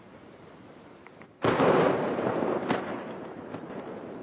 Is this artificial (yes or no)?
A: yes